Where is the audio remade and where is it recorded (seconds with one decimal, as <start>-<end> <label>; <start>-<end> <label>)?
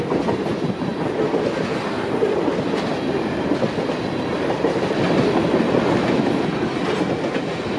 0.0-7.8 recorded